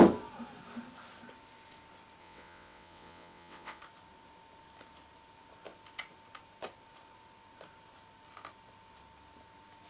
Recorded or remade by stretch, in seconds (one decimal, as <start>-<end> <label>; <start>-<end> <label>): 0.0-2.2 recorded; 2.2-3.8 remade; 3.8-9.9 recorded